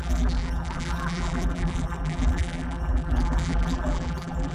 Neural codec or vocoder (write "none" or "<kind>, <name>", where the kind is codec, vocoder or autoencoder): vocoder, BigVGAN v2